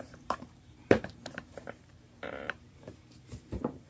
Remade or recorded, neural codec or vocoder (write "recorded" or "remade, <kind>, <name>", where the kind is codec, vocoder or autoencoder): remade, vocoder, BigVGAN v2